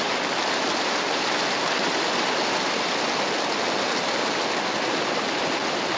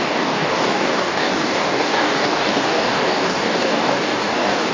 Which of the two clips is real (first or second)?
first